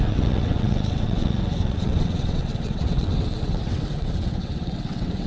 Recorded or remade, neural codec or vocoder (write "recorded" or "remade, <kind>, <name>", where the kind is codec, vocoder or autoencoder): remade, vocoder, WaveNeXt